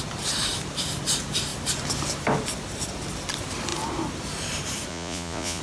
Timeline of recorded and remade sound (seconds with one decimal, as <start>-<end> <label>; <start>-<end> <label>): 0.0-4.9 recorded; 4.9-5.6 remade